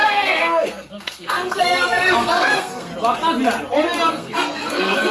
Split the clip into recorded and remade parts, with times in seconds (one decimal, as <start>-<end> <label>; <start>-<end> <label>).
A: 0.0-2.9 remade; 2.9-4.1 recorded; 4.1-5.1 remade

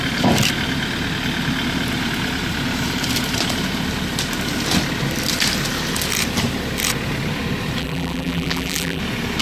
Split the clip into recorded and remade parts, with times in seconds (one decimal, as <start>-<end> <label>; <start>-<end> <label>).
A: 0.0-7.8 recorded; 7.8-9.0 remade; 9.0-9.4 recorded

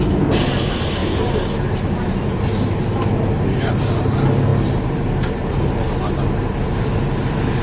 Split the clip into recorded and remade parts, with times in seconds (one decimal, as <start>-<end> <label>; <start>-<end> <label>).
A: 0.0-7.6 recorded

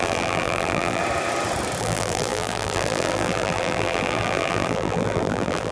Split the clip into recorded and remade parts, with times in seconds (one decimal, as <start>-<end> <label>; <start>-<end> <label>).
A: 0.0-1.0 remade; 1.0-1.8 recorded; 1.8-5.7 remade

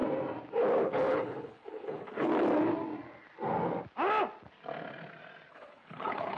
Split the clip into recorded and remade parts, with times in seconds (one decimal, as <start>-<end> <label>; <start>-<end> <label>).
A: 0.0-0.8 recorded; 0.8-2.3 remade; 2.3-5.5 recorded; 5.5-6.4 remade

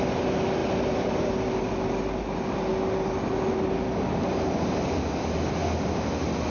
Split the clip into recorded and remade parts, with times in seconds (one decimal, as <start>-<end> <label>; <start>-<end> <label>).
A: 0.0-6.5 recorded

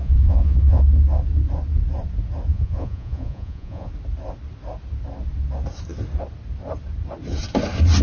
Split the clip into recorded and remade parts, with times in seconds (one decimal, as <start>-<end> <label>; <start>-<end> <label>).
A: 0.0-0.8 remade; 0.8-2.5 recorded; 2.5-3.9 remade; 3.9-8.0 recorded